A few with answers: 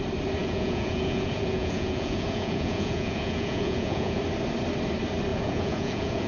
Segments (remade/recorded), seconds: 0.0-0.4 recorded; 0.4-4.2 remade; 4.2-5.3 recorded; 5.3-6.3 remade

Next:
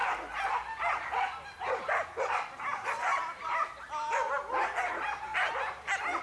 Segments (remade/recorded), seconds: 0.0-3.1 recorded; 3.1-3.7 remade; 3.7-6.2 recorded

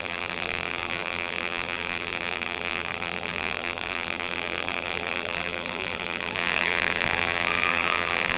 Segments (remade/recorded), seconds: 0.0-8.4 remade

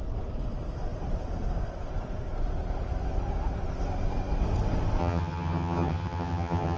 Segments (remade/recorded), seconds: 0.0-5.0 recorded; 5.0-6.8 remade

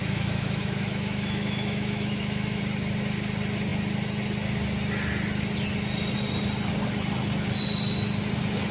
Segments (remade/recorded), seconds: 0.0-2.6 remade; 2.6-8.7 recorded

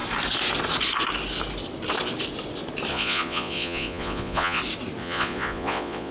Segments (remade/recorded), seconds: 0.0-2.9 recorded; 2.9-4.6 remade; 4.6-5.0 recorded; 5.0-6.1 remade

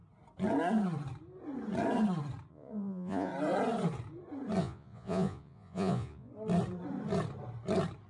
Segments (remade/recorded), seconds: 0.0-2.5 recorded; 2.5-3.3 remade; 3.3-4.6 recorded; 4.6-6.3 remade; 6.3-8.1 recorded